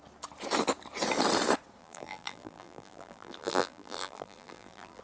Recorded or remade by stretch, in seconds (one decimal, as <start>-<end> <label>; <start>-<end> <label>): 0.0-1.8 recorded; 1.8-5.0 remade